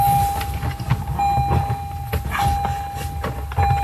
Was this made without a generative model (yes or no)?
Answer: yes